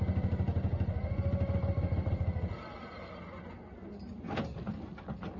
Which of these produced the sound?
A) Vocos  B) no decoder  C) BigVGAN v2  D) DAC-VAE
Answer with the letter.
B